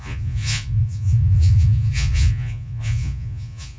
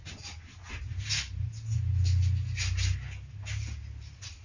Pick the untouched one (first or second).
second